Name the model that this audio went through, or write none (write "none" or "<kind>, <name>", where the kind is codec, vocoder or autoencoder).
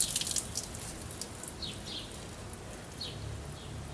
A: none